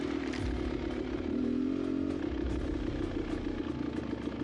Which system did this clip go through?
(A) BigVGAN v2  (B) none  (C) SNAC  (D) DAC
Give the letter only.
B